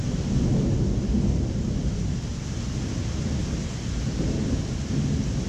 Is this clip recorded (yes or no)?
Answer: yes